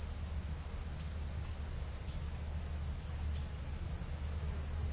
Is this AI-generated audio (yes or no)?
no